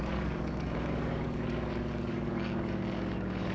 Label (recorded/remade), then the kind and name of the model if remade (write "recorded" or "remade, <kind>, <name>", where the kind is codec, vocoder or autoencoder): remade, codec, DAC